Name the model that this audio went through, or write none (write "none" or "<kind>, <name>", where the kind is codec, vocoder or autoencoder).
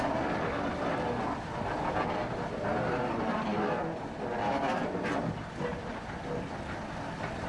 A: none